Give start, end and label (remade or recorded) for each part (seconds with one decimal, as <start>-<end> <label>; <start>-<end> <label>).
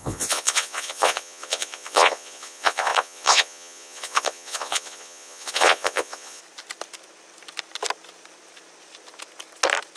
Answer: 0.0-6.4 remade; 6.4-10.0 recorded